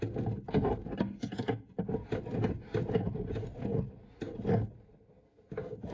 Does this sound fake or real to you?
real